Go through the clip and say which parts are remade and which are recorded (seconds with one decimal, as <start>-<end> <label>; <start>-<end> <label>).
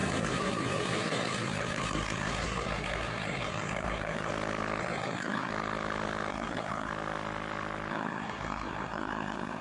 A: 0.0-4.3 remade; 4.3-4.8 recorded; 4.8-5.5 remade; 5.5-6.3 recorded; 6.3-6.9 remade; 6.9-7.9 recorded; 7.9-9.6 remade